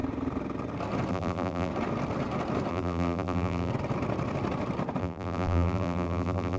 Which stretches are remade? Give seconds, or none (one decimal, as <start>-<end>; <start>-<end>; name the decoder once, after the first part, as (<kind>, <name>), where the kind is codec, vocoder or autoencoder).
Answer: 1.1-1.7 (vocoder, BigVGAN v2); 2.7-3.7; 5.0-6.6